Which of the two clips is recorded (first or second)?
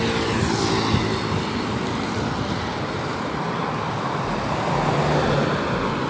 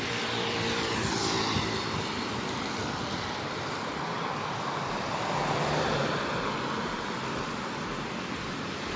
first